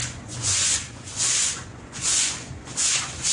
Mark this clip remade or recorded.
remade